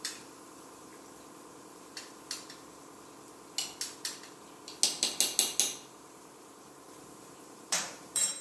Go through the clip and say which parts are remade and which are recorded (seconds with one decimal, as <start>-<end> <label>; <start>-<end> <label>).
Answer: 0.0-0.9 remade; 0.9-5.9 recorded; 5.9-8.4 remade